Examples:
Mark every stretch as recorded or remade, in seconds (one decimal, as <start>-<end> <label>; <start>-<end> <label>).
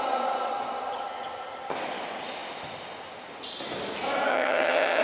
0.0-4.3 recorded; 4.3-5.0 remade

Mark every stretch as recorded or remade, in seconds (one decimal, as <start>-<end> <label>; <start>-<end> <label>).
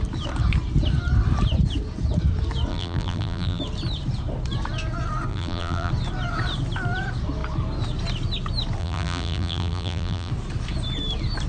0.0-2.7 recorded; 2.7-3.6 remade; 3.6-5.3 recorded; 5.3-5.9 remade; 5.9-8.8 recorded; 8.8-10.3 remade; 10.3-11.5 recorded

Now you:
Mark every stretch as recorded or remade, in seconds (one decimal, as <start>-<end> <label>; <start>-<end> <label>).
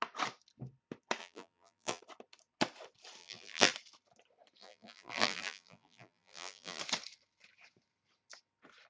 0.0-1.2 recorded; 1.2-2.0 remade; 2.0-3.2 recorded; 3.2-3.7 remade; 3.7-4.6 recorded; 4.6-6.8 remade; 6.8-8.9 recorded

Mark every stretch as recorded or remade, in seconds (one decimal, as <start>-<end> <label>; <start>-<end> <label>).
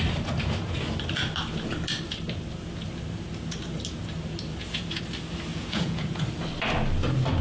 0.0-4.5 recorded; 4.5-5.0 remade; 5.0-5.5 recorded; 5.5-6.2 remade; 6.2-7.4 recorded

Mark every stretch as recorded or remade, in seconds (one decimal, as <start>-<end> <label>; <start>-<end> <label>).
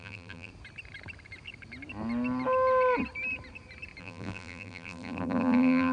0.0-0.5 remade; 0.5-4.0 recorded; 4.0-5.9 remade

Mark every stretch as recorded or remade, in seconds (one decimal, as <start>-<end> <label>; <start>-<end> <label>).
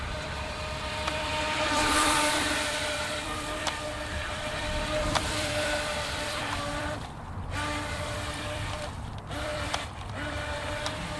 0.0-11.2 remade